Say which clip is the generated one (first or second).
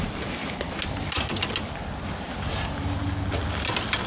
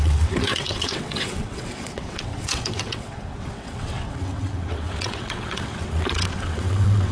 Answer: second